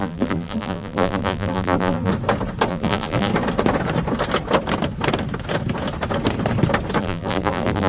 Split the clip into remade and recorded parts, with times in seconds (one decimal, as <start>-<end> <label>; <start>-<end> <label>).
0.0-2.1 remade; 2.1-2.7 recorded; 2.7-3.3 remade; 3.3-7.0 recorded; 7.0-7.9 remade

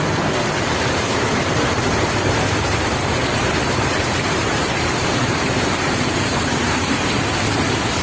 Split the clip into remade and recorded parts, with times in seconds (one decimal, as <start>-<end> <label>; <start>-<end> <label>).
0.0-3.2 remade; 3.2-4.5 recorded; 4.5-8.0 remade